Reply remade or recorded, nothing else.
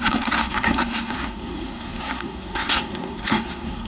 remade